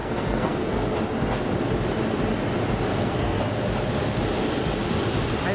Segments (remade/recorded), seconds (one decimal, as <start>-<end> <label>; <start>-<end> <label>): 0.0-0.7 remade; 0.7-2.9 recorded; 2.9-3.4 remade; 3.4-5.5 recorded